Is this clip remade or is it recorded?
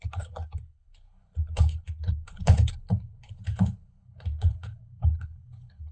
remade